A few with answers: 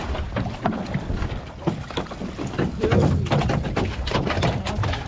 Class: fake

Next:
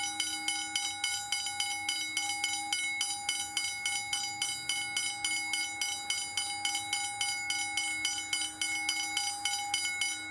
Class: real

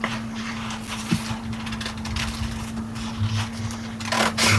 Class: real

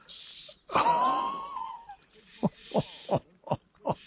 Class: real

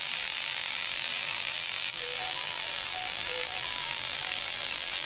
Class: fake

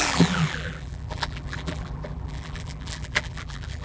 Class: fake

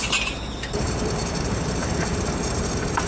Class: fake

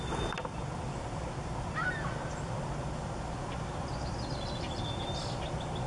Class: real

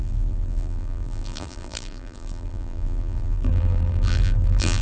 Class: fake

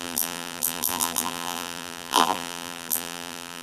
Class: fake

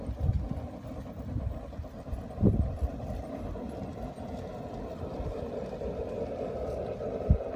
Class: real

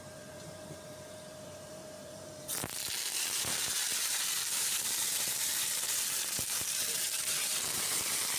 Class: fake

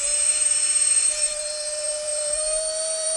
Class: fake